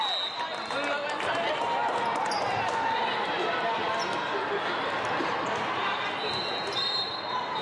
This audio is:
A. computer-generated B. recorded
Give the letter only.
B